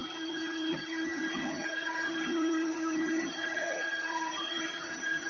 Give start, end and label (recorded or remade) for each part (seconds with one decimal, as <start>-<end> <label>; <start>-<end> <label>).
0.0-5.3 remade